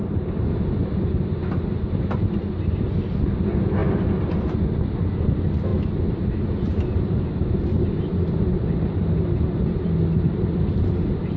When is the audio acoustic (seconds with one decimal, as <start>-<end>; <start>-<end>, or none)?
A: 0.0-11.4